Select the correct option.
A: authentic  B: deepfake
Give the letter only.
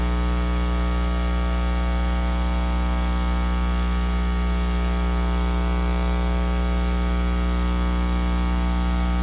B